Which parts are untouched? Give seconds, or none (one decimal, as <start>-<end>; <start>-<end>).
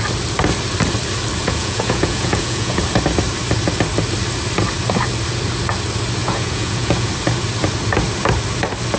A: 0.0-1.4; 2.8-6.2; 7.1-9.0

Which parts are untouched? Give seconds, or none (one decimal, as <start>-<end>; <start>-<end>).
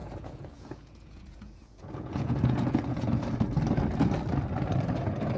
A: 3.2-5.4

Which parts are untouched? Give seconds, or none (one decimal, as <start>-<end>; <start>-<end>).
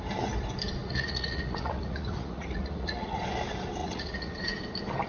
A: 0.0-0.8; 3.2-3.8; 4.6-5.1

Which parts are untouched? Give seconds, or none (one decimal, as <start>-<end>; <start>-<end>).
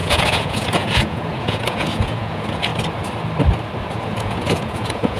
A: 2.7-3.9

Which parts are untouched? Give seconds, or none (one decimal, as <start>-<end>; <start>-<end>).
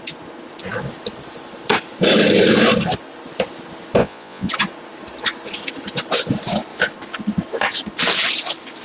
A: 0.0-4.0; 4.5-8.8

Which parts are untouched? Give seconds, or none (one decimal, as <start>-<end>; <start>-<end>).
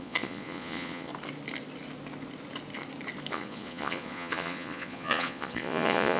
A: 1.1-3.3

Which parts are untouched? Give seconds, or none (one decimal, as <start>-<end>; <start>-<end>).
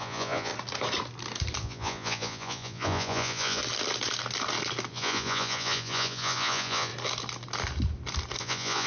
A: 0.5-1.6; 3.6-4.9; 6.9-8.4